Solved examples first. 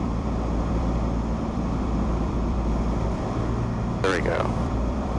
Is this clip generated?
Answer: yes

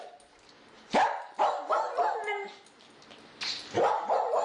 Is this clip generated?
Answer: no